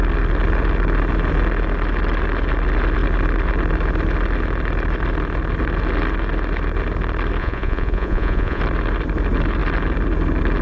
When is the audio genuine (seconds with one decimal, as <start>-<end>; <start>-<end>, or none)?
0.0-7.4; 8.6-10.6